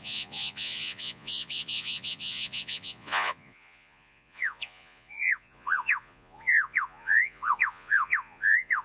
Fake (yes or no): yes